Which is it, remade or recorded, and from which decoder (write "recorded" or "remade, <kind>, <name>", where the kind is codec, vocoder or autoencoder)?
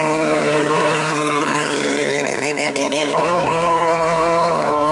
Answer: remade, codec, SNAC